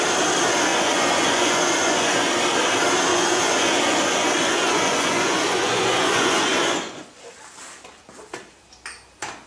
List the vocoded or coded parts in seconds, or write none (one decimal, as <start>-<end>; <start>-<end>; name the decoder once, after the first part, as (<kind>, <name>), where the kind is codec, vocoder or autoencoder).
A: 0.7-2.3 (vocoder, Vocos); 3.1-7.2

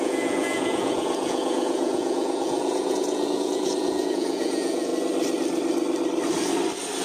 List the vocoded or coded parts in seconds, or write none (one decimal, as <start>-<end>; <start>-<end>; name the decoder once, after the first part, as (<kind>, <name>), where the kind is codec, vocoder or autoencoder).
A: 0.0-4.9 (vocoder, Vocos)